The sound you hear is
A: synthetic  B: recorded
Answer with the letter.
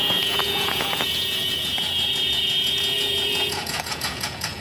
A